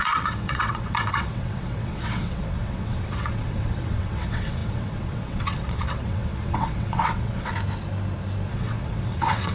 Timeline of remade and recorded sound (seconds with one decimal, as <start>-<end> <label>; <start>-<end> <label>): 0.0-7.5 remade; 7.5-8.5 recorded; 8.5-9.5 remade

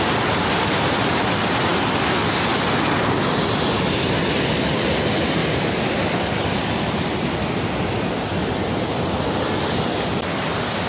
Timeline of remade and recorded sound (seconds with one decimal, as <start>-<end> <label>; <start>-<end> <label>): 0.0-10.9 recorded

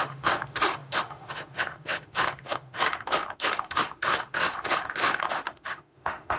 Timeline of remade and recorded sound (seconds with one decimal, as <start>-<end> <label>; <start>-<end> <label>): 0.0-6.4 remade

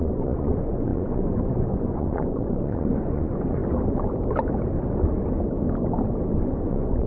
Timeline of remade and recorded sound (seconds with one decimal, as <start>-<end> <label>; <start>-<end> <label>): 0.0-3.6 remade; 3.6-6.6 recorded; 6.6-7.1 remade

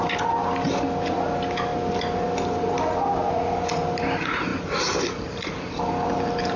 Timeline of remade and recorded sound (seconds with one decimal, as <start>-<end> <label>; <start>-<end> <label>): 0.0-6.6 recorded